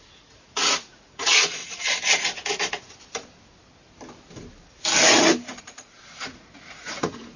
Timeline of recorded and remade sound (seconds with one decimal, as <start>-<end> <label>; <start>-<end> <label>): 0.0-1.6 remade; 1.6-5.6 recorded; 5.6-7.4 remade

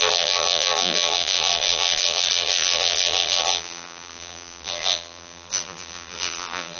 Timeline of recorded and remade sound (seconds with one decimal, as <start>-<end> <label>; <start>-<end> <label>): 0.0-6.8 remade

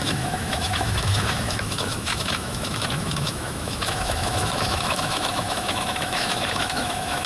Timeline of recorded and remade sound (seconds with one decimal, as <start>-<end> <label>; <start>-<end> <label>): 0.0-7.3 remade

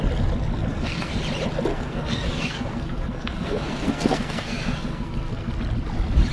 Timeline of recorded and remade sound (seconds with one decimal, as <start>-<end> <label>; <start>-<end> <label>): 0.0-0.7 recorded; 0.7-1.2 remade; 1.2-1.7 recorded; 1.7-5.5 remade; 5.5-6.3 recorded

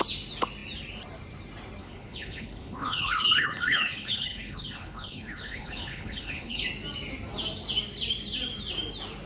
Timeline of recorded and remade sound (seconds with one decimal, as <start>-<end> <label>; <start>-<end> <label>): 0.0-1.8 recorded; 1.8-6.7 remade; 6.7-9.3 recorded